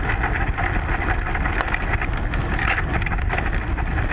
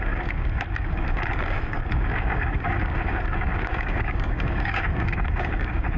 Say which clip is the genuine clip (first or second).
first